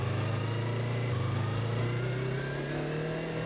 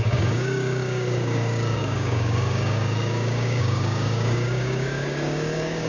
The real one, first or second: first